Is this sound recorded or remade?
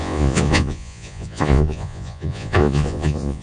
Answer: remade